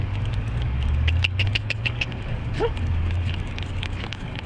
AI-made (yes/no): yes